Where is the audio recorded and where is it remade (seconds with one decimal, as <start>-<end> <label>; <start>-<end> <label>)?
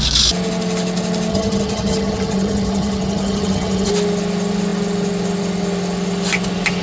0.0-1.3 recorded; 1.3-3.9 remade; 3.9-6.8 recorded